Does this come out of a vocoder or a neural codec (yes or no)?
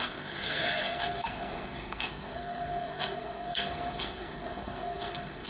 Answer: yes